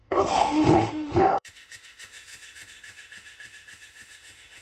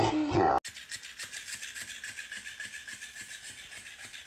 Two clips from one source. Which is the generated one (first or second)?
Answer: first